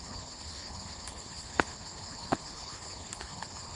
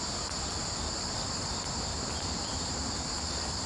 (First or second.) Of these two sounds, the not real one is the first